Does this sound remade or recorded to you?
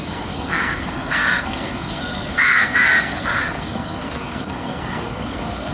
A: remade